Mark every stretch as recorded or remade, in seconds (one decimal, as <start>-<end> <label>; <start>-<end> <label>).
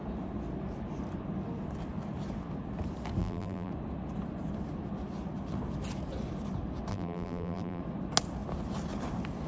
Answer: 0.0-3.2 recorded; 3.2-3.7 remade; 3.7-6.9 recorded; 6.9-7.8 remade; 7.8-9.5 recorded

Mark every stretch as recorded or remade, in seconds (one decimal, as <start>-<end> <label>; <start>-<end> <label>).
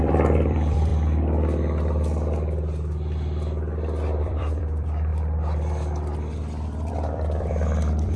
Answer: 0.0-0.9 remade; 0.9-4.2 recorded; 4.2-5.1 remade; 5.1-6.9 recorded; 6.9-8.2 remade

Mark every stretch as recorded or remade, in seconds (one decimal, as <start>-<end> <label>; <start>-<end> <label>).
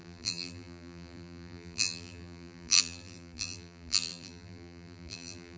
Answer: 0.0-5.6 remade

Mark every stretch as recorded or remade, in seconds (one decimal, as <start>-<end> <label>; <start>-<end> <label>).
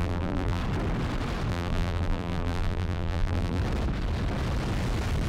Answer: 0.0-0.6 remade; 0.6-1.5 recorded; 1.5-3.6 remade; 3.6-5.3 recorded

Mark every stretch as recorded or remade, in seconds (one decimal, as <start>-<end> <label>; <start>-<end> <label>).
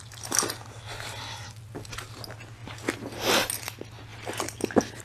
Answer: 0.0-5.0 recorded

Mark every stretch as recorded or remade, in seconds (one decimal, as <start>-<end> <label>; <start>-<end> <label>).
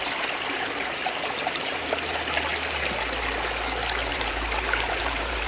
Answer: 0.0-2.5 remade; 2.5-4.1 recorded; 4.1-5.5 remade